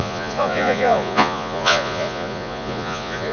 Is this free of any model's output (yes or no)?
no